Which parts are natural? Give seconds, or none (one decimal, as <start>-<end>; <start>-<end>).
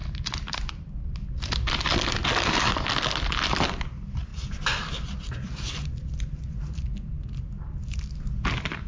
0.0-8.9